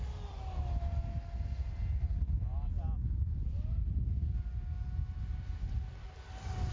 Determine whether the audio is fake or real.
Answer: real